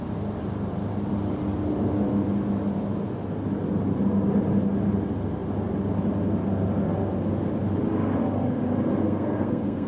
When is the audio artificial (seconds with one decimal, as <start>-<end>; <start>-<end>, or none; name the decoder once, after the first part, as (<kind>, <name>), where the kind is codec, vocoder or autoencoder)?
9.0-9.9 (codec, SNAC)